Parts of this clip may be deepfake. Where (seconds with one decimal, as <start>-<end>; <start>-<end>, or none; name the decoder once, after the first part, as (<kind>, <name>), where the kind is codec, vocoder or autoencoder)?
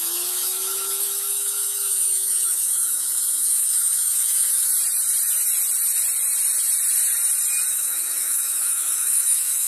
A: 0.0-4.7 (autoencoder, DAC-VAE); 7.7-9.7